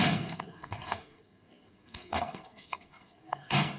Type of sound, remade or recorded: remade